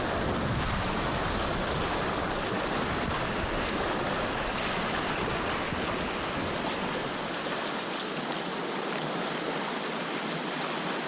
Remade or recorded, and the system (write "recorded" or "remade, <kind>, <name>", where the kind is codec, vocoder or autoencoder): recorded